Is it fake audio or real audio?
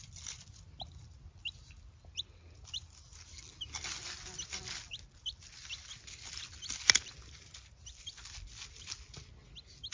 real